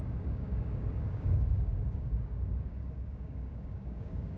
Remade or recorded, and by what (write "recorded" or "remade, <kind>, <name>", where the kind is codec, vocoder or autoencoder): remade, codec, DAC